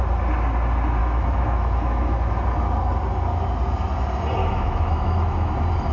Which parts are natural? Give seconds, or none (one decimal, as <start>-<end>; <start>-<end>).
0.0-1.0; 2.2-4.4; 5.5-5.9